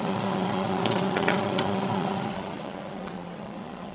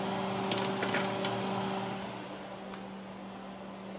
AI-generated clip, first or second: first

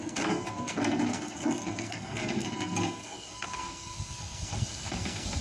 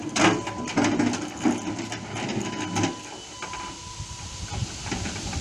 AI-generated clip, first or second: first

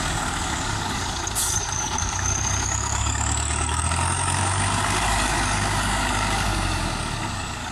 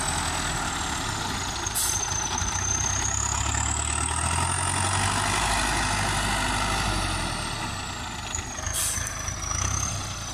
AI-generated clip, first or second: first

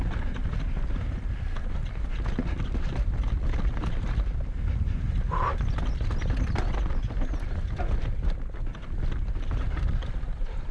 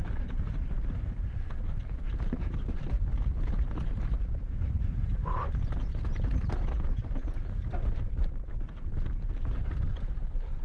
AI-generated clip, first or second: second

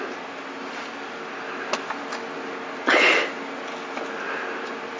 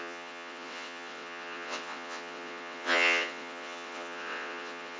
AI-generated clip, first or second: second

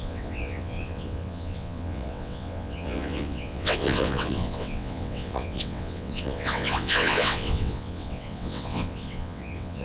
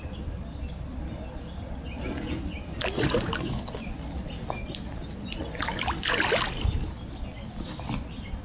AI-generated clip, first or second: first